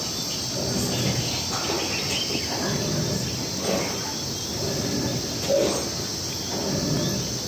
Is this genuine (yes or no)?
yes